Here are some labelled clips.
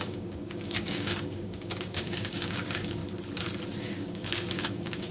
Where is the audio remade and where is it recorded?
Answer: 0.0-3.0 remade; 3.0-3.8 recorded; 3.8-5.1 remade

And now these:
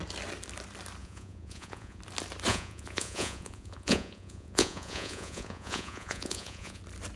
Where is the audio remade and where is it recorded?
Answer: 0.0-1.0 recorded; 1.0-2.0 remade; 2.0-2.5 recorded; 2.5-6.8 remade; 6.8-7.2 recorded

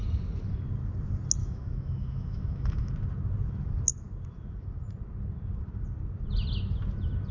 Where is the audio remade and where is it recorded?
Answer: 0.0-1.4 recorded; 1.4-2.9 remade; 2.9-7.3 recorded

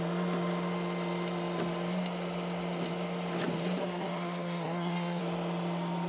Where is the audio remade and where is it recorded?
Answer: 0.0-3.8 recorded; 3.8-5.2 remade; 5.2-6.1 recorded

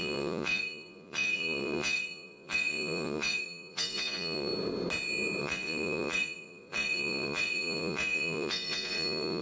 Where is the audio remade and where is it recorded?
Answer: 0.0-4.5 remade; 4.5-5.4 recorded; 5.4-9.4 remade

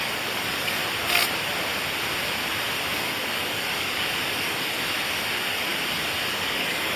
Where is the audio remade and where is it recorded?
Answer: 0.0-0.8 remade; 0.8-2.9 recorded; 2.9-5.7 remade; 5.7-6.3 recorded; 6.3-7.0 remade

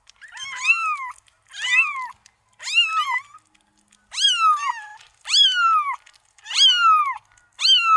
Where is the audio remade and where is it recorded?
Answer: 0.0-8.0 recorded

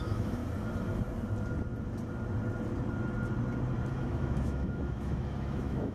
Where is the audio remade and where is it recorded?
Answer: 0.0-0.4 remade; 0.4-3.9 recorded; 3.9-5.9 remade